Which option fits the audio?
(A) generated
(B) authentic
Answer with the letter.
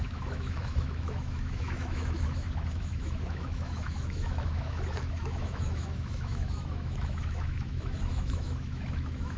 A